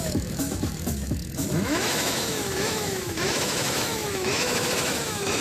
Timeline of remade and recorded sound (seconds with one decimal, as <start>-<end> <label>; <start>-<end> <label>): 0.0-5.4 remade